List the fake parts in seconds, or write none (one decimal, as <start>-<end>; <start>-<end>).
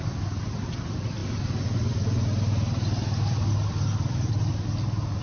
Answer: none